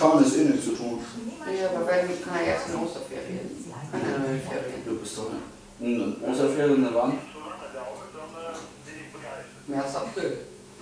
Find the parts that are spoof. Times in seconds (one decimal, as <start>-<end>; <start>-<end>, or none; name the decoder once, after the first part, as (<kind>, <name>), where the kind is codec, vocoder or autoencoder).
8.8-10.8 (autoencoder, DAC-VAE)